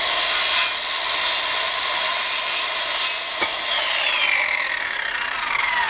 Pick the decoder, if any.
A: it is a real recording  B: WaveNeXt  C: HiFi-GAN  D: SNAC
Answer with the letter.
A